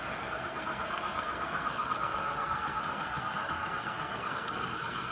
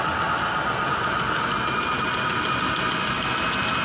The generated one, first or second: first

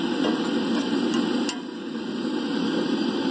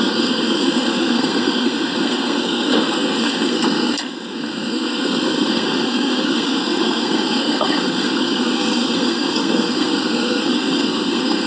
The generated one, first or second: second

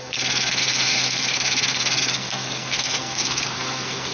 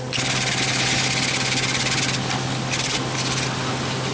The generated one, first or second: first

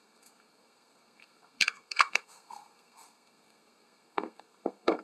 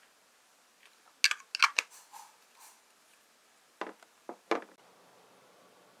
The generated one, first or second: first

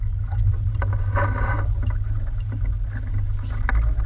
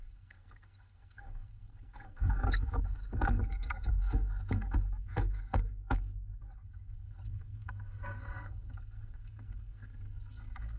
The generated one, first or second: second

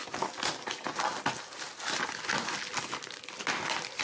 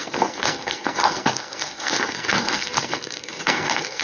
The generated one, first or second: second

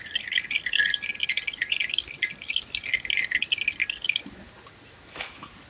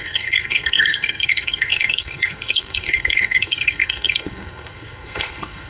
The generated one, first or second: second